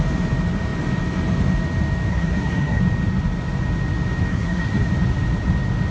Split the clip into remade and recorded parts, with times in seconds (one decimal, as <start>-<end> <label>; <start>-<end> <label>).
0.0-2.1 recorded; 2.1-2.8 remade; 2.8-4.3 recorded; 4.3-4.9 remade; 4.9-5.9 recorded